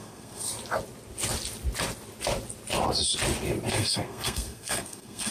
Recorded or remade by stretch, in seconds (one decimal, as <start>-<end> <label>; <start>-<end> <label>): 0.0-0.5 remade; 0.5-3.7 recorded; 3.7-5.3 remade